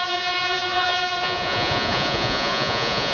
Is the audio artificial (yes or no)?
yes